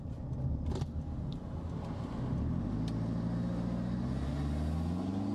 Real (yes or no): yes